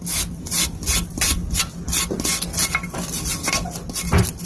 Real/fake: real